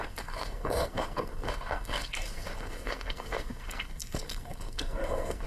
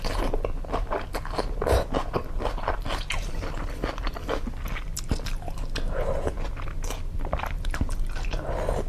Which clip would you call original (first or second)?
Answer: second